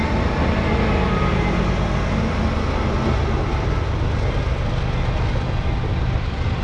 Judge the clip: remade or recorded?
recorded